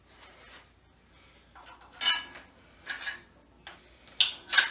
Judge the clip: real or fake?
real